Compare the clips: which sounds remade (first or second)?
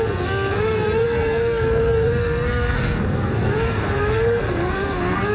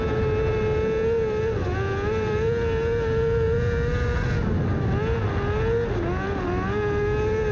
first